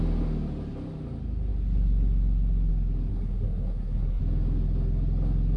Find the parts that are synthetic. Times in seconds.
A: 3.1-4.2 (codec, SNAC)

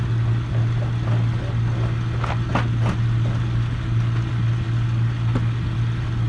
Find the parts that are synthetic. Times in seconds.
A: none

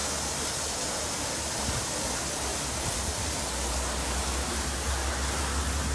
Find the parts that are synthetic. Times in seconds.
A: none